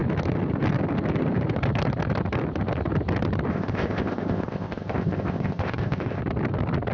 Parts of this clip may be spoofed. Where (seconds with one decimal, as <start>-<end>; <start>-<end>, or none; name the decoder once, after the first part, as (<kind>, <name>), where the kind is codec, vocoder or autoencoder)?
3.5-6.2 (codec, ZipCodec)